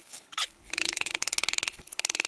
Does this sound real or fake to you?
fake